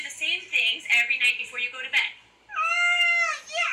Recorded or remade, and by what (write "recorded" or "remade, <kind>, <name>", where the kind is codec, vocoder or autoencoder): recorded